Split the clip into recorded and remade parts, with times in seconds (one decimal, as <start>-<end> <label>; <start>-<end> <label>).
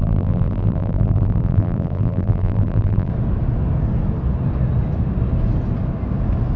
0.0-3.1 remade; 3.1-6.6 recorded